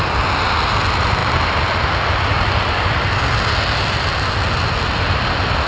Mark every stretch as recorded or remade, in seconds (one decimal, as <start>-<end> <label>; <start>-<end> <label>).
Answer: 0.0-5.7 recorded